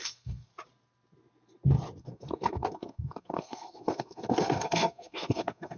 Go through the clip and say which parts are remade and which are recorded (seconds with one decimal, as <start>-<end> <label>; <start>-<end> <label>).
0.0-0.5 remade; 0.5-2.0 recorded; 2.0-5.8 remade